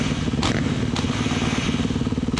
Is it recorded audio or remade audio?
recorded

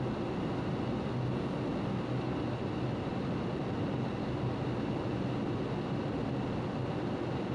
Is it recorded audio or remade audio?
recorded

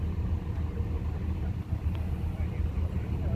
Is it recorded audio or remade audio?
recorded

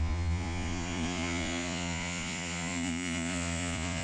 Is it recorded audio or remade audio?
remade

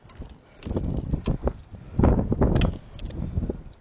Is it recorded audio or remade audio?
recorded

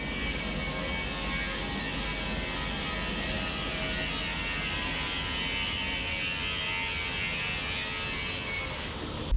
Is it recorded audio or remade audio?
recorded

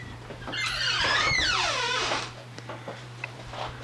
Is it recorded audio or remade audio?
remade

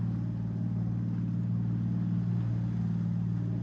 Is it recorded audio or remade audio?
recorded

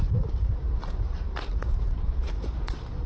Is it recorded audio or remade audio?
remade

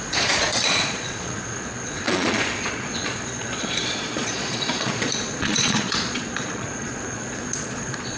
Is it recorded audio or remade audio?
remade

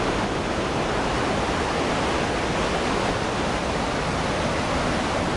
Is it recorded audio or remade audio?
recorded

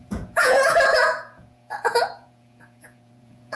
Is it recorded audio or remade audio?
remade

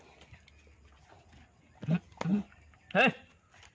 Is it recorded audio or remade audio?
recorded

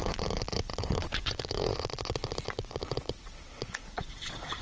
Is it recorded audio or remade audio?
remade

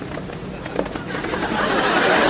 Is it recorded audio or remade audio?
recorded